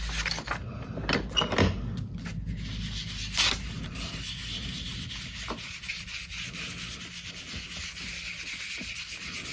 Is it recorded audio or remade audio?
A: recorded